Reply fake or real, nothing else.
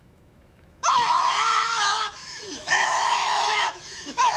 fake